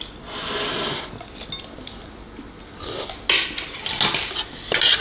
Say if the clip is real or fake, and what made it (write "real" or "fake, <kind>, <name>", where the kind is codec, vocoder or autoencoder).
real